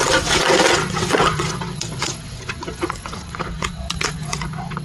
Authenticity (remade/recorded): remade